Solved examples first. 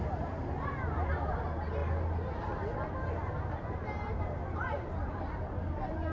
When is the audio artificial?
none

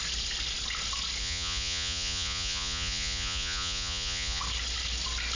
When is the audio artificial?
1.2-4.4 (vocoder, Vocos)

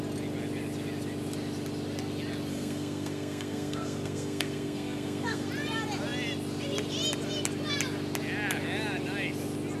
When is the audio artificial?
2.5-5.5 (codec, SNAC)

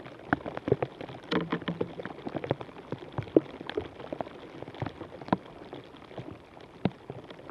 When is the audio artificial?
none

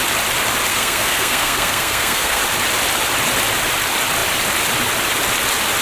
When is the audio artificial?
0.7-2.4 (codec, SNAC)

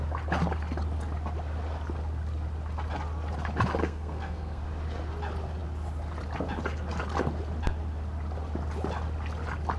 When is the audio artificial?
3.8-4.6 (codec, SNAC)

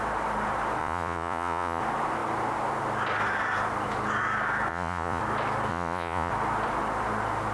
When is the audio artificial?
0.8-1.8 (vocoder, Vocos); 4.7-5.2; 5.7-6.3

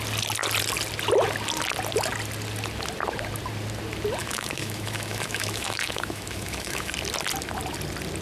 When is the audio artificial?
4.2-6.9 (autoencoder, DAC-VAE)